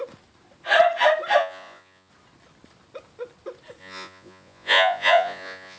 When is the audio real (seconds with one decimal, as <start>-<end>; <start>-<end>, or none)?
0.0-1.4; 2.1-3.8